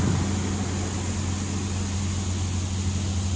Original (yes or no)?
yes